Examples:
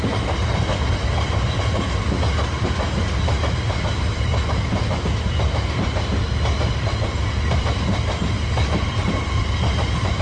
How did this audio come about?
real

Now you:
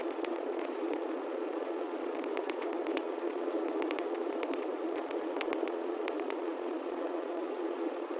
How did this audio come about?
fake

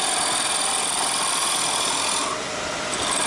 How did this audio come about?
real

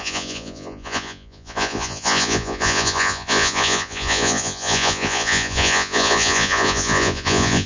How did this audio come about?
fake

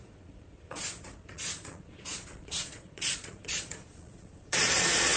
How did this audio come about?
fake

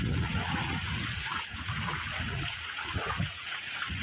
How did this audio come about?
fake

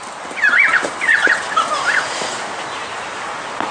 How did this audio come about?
real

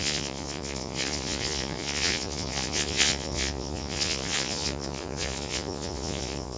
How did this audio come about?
fake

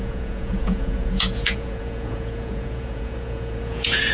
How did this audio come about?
fake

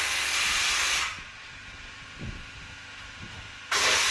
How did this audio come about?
real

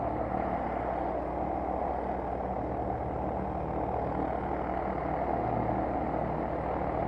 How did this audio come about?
real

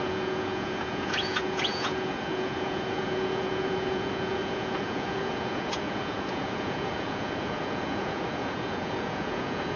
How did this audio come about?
fake